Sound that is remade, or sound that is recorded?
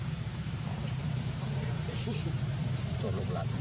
remade